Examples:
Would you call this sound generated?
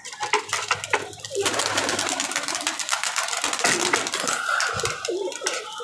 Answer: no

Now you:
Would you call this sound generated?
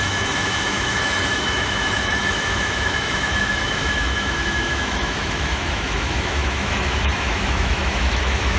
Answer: yes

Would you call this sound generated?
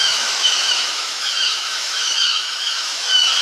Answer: yes